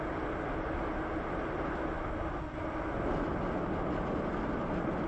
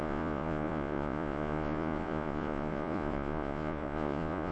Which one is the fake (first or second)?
second